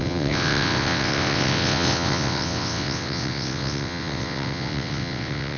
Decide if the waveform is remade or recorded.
remade